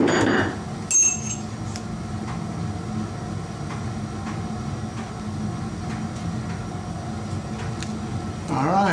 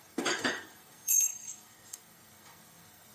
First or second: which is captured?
first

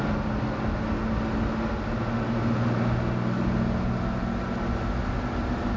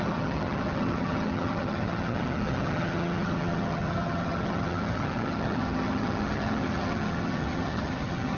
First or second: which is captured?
first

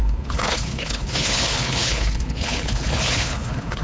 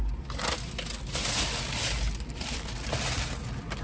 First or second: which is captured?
second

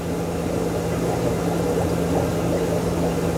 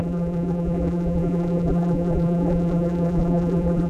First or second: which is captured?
first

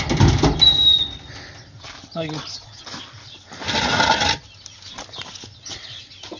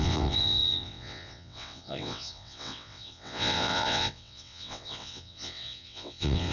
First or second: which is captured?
first